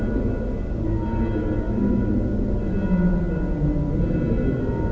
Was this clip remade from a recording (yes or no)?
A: no